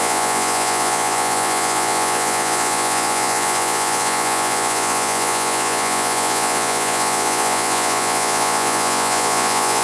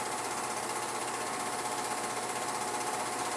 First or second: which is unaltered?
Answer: second